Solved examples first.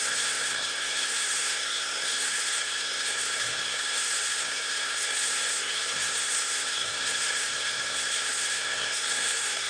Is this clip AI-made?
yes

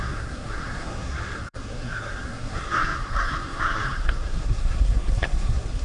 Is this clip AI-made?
yes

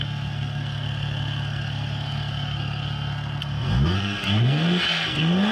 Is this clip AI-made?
yes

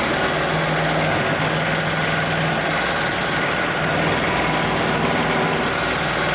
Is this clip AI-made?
no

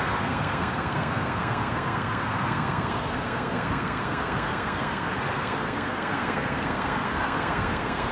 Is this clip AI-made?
yes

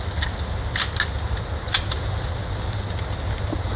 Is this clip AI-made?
no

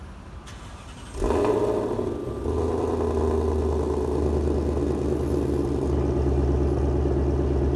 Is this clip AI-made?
no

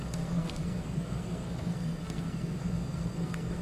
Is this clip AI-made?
yes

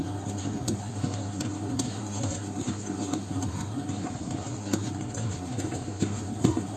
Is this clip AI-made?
yes